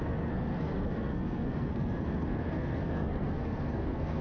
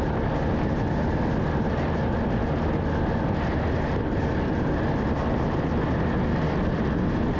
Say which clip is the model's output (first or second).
first